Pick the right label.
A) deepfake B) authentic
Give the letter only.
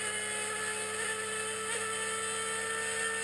B